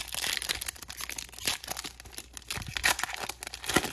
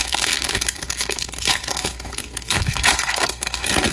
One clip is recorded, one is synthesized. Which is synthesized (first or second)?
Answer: second